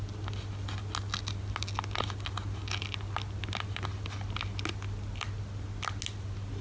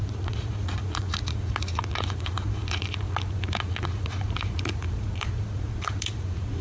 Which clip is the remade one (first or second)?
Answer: second